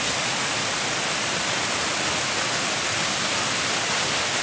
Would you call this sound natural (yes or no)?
yes